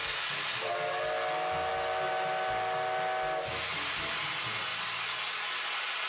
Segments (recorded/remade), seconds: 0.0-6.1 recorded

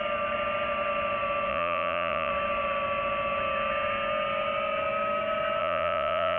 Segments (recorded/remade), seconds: 0.0-1.5 recorded; 1.5-2.3 remade; 2.3-5.6 recorded; 5.6-6.4 remade

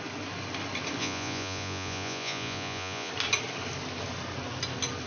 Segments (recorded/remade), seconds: 0.0-1.0 recorded; 1.0-3.1 remade; 3.1-5.1 recorded

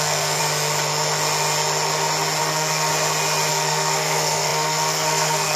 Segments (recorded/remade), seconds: 0.0-0.4 remade; 0.4-2.4 recorded; 2.4-2.9 remade; 2.9-3.5 recorded; 3.5-5.6 remade

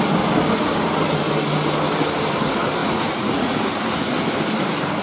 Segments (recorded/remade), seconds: 0.0-2.8 recorded; 2.8-3.6 remade; 3.6-5.0 recorded